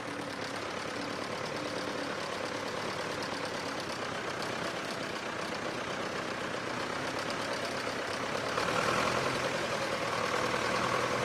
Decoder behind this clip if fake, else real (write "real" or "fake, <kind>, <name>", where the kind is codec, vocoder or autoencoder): real